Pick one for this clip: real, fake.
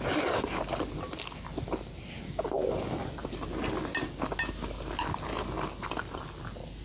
real